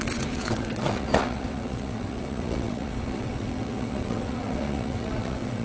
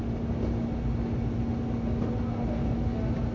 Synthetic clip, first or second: first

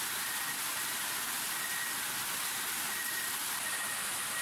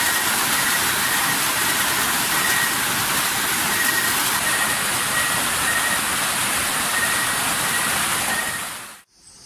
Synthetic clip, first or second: second